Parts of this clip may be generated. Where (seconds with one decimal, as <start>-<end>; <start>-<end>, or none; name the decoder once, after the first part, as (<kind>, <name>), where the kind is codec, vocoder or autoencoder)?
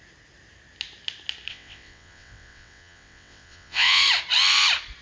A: 1.5-4.0 (vocoder, WaveNeXt)